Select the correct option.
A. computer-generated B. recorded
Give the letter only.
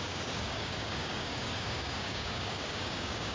A